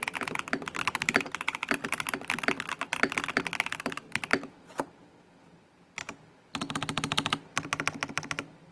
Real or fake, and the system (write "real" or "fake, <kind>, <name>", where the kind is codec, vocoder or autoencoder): real